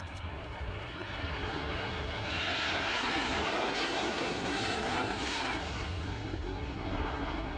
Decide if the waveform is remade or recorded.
remade